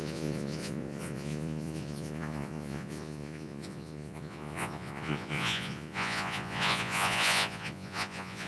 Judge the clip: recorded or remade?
remade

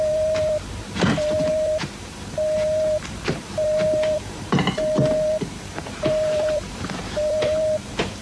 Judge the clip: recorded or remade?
remade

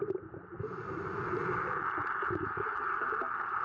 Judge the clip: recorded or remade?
recorded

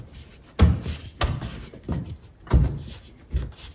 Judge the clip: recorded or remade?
recorded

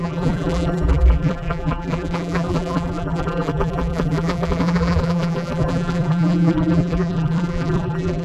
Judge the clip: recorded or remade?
remade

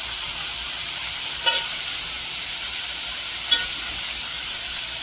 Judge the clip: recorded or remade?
recorded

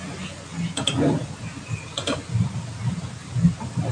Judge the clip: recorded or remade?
recorded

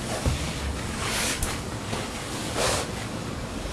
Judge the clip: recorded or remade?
remade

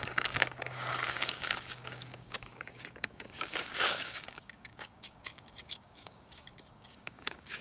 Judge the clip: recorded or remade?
remade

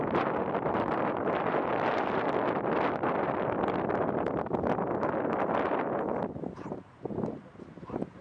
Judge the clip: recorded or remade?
recorded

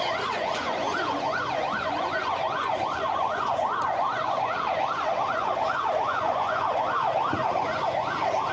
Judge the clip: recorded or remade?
remade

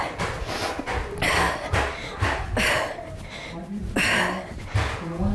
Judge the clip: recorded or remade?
recorded